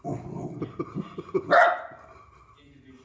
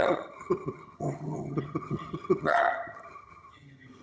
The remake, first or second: second